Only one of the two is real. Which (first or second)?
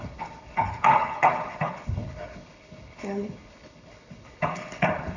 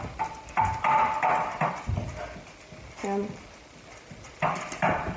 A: second